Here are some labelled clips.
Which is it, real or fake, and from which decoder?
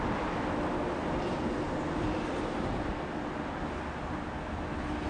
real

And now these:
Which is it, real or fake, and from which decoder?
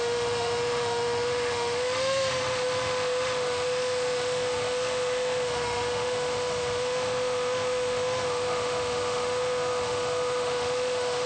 fake, autoencoder, DAC-VAE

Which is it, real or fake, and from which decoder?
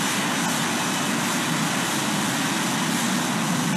real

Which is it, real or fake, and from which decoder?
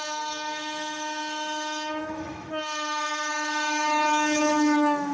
fake, autoencoder, DAC-VAE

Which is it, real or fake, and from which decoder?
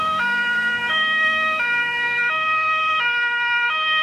fake, autoencoder, DAC-VAE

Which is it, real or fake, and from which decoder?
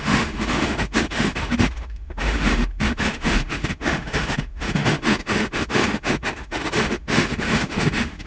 fake, autoencoder, DAC-VAE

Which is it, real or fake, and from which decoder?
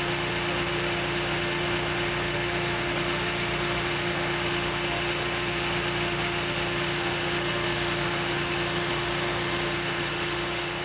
fake, autoencoder, DAC-VAE